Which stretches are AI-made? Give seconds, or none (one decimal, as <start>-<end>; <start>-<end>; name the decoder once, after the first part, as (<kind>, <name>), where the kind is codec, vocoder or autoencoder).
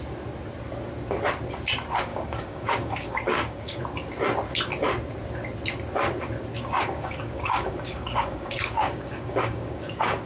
2.1-3.8 (codec, DAC); 6.5-10.3